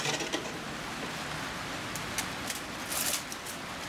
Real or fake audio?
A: real